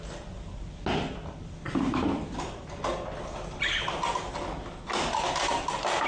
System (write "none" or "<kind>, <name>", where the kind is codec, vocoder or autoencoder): none